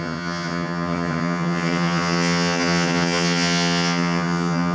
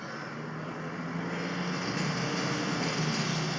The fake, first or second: first